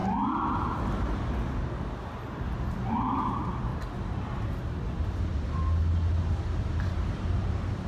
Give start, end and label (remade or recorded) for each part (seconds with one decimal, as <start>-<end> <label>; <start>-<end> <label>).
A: 0.0-2.9 recorded; 2.9-3.7 remade; 3.7-6.6 recorded; 6.6-7.9 remade